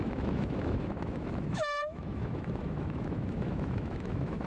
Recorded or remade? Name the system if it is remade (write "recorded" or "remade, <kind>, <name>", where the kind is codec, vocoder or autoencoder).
remade, autoencoder, DAC-VAE